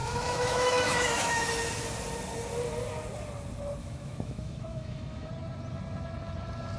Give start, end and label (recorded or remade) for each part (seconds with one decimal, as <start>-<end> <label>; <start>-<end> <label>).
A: 0.0-1.5 remade; 1.5-3.8 recorded; 3.8-5.3 remade; 5.3-6.8 recorded